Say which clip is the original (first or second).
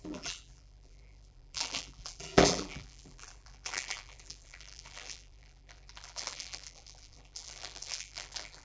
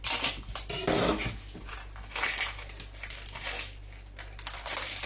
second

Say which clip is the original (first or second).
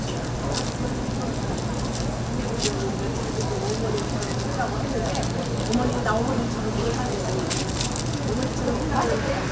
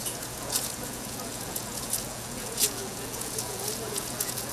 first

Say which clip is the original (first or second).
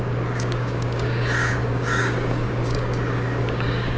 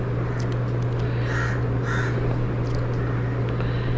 second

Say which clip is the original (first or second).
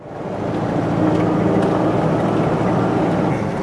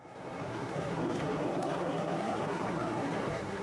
first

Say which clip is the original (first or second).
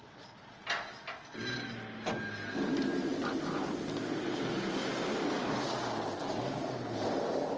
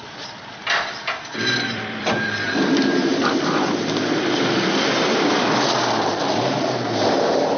first